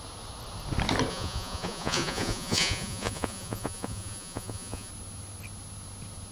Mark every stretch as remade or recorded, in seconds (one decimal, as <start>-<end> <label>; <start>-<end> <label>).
0.0-1.1 recorded; 1.1-4.9 remade; 4.9-6.3 recorded